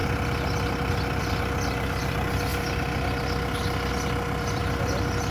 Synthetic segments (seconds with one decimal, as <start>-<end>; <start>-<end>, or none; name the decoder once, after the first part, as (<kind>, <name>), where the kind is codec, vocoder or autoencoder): none